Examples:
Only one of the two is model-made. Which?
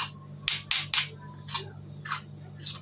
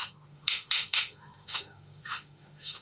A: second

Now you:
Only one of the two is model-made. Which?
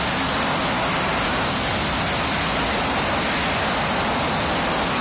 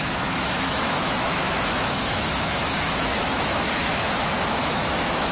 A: second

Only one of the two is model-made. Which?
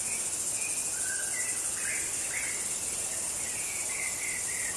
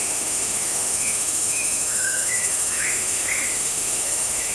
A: second